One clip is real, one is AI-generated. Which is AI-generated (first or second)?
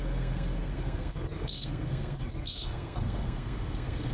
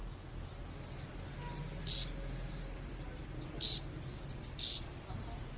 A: first